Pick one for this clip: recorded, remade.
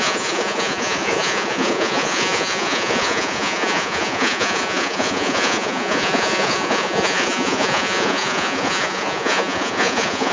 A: remade